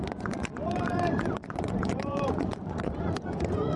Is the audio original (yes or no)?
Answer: no